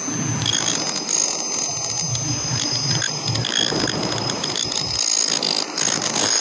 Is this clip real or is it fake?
real